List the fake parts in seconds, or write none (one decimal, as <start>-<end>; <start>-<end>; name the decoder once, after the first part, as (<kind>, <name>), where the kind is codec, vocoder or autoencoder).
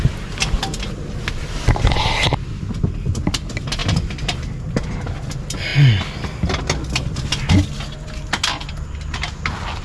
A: 3.8-4.3 (vocoder, BigVGAN v2)